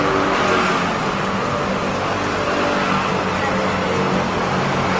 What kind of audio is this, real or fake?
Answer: real